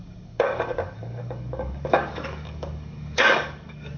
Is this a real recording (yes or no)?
no